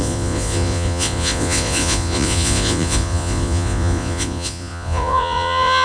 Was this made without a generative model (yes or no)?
no